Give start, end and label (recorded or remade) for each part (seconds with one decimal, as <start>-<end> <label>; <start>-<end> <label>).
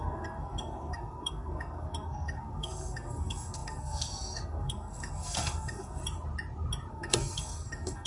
0.0-6.0 remade; 6.0-6.9 recorded; 6.9-8.1 remade